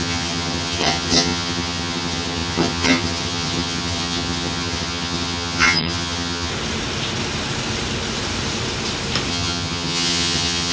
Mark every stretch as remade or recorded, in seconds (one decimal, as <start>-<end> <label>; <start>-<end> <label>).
0.0-6.5 remade; 6.5-9.3 recorded; 9.3-10.7 remade